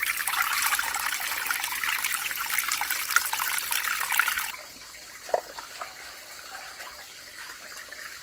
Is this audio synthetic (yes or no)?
no